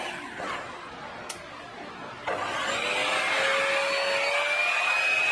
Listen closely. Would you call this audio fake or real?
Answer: real